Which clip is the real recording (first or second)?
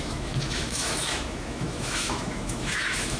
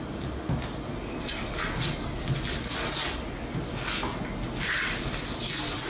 second